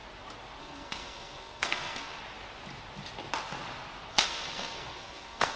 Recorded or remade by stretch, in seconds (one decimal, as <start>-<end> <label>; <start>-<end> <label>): 0.0-0.6 recorded; 0.6-2.2 remade; 2.2-4.1 recorded; 4.1-5.6 remade